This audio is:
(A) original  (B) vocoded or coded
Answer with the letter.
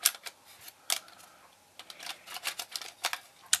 A